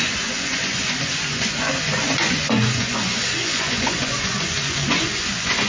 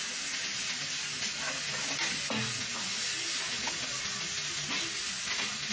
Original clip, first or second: second